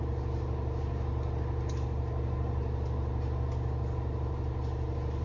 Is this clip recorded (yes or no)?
yes